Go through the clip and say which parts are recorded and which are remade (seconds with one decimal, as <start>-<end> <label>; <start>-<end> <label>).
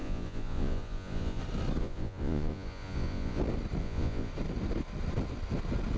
0.0-1.4 remade; 1.4-1.8 recorded; 1.8-3.4 remade; 3.4-3.8 recorded; 3.8-4.3 remade; 4.3-6.0 recorded